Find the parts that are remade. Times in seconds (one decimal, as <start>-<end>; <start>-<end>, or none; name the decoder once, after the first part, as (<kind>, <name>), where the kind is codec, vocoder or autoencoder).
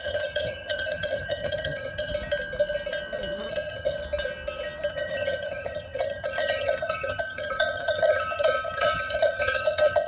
0.0-2.1 (vocoder, HiFi-GAN); 3.5-4.0; 4.9-10.1